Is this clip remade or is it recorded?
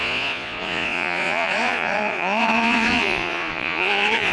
remade